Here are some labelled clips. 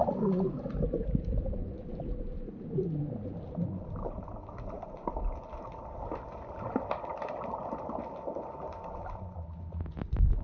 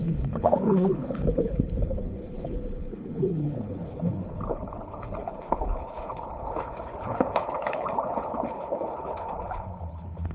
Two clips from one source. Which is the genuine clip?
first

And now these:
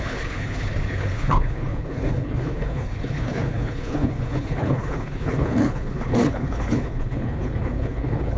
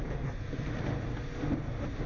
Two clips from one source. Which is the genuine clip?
second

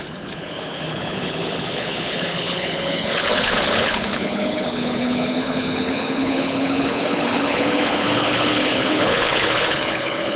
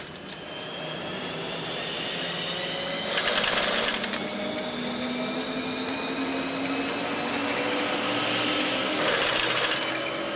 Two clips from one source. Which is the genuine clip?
second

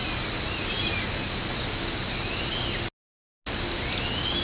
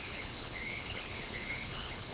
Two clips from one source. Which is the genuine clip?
first